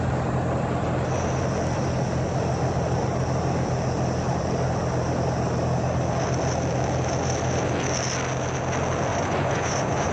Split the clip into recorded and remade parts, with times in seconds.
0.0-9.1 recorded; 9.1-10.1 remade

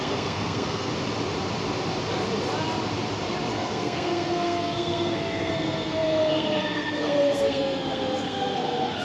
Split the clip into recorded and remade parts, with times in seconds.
0.0-0.9 remade; 0.9-3.5 recorded; 3.5-9.0 remade